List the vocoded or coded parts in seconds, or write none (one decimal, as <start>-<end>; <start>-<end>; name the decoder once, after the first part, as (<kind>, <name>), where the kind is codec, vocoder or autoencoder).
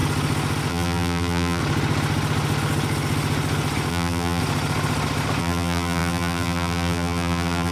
0.7-1.6 (vocoder, BigVGAN v2); 3.9-4.4; 5.4-7.7